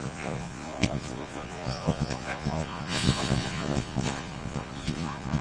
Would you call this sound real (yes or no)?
no